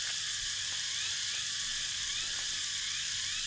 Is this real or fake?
real